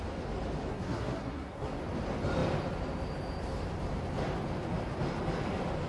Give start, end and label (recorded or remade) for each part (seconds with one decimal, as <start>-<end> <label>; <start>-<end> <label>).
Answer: 0.0-0.7 recorded; 0.7-1.8 remade; 1.8-5.9 recorded